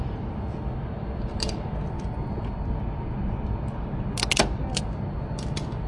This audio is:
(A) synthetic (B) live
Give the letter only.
B